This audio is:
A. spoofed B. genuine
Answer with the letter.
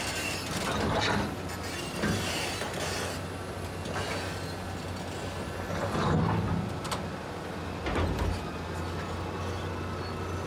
B